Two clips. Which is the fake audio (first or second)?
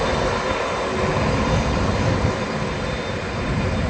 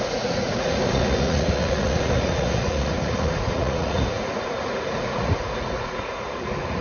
second